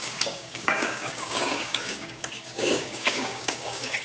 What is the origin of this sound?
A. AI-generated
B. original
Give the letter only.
A